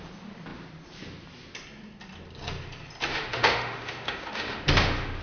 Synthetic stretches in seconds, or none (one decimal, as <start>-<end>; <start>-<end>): 3.1-5.2